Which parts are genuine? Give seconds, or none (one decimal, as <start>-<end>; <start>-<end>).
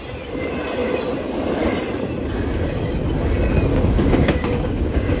0.0-3.7